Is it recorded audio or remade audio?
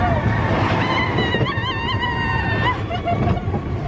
recorded